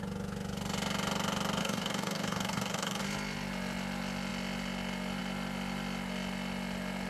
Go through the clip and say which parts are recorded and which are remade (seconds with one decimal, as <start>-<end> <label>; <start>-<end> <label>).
0.0-1.6 recorded; 1.6-3.0 remade; 3.0-7.1 recorded

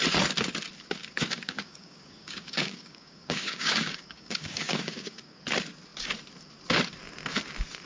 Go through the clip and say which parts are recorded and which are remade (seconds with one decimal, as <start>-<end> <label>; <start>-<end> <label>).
0.0-1.0 recorded; 1.0-5.4 remade; 5.4-7.9 recorded